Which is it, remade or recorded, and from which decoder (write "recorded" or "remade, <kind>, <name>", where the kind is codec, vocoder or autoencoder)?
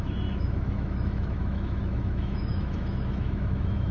remade, autoencoder, DAC-VAE